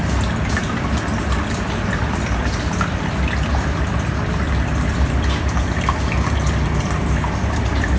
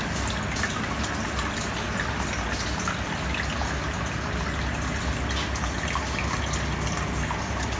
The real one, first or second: second